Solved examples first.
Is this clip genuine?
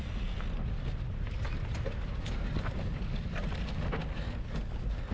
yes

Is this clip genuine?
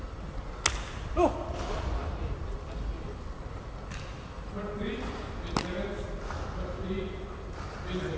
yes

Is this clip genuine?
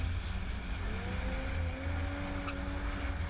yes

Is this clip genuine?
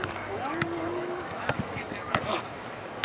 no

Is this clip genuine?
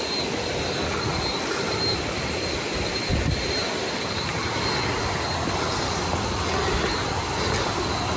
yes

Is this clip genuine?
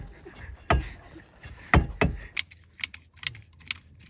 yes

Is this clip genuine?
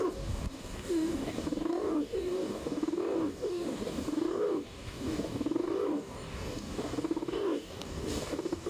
no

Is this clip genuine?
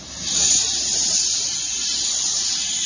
yes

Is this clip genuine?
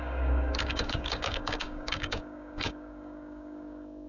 no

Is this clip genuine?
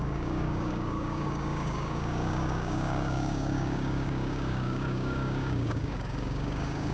no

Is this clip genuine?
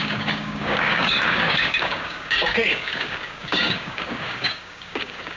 no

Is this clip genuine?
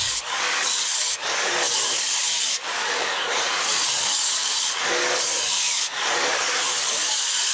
no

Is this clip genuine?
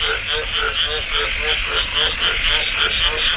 yes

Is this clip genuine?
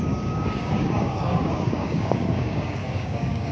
no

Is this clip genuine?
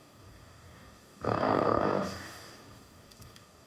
no